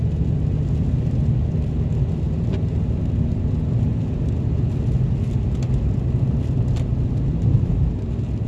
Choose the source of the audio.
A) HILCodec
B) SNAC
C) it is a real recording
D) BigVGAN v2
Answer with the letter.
C